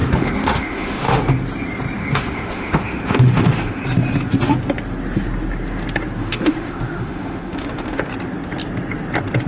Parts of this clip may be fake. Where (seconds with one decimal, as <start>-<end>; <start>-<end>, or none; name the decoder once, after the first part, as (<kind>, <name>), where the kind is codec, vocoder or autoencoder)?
0.0-1.2 (autoencoder, DAC-VAE); 2.0-3.8; 6.2-8.1